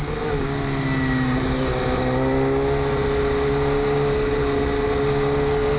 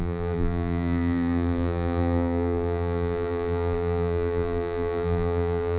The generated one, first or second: second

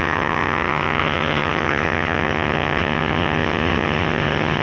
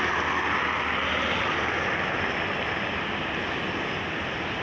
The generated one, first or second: first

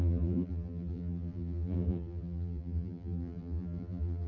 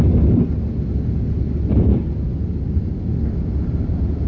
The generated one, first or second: first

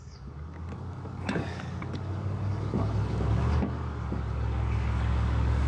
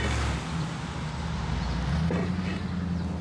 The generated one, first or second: first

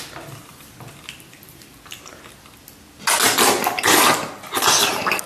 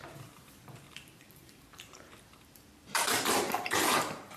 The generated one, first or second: second